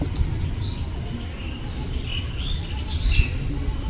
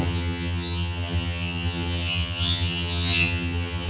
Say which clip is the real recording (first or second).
first